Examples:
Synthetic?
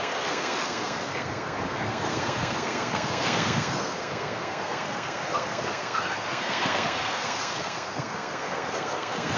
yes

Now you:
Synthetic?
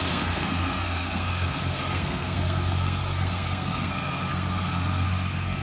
yes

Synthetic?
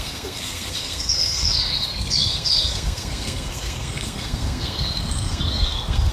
yes